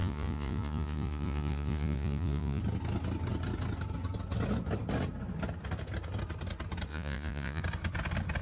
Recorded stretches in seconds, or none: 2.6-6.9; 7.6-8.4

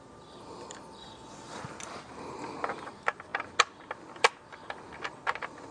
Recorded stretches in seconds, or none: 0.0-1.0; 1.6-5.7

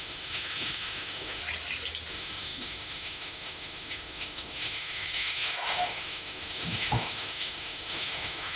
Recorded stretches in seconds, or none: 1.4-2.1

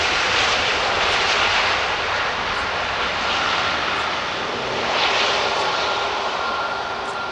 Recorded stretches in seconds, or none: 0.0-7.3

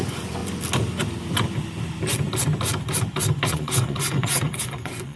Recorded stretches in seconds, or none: 0.4-3.5

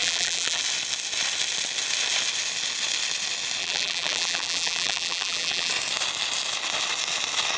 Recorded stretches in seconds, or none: 0.6-3.6; 5.7-7.6

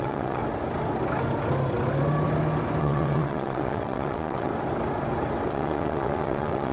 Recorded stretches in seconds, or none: 0.4-2.8; 4.5-5.5